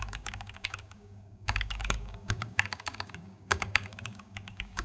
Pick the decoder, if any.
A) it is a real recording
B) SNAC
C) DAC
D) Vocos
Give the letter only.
C